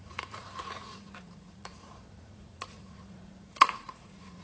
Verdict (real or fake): fake